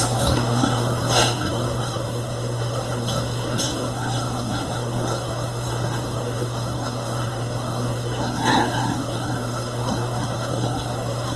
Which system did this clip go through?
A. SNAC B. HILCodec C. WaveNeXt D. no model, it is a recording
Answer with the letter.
A